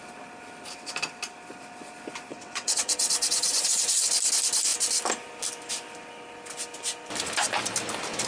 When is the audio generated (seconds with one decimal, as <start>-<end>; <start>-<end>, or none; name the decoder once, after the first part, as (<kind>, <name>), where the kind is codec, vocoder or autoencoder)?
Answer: 2.3-4.1 (vocoder, WaveNeXt)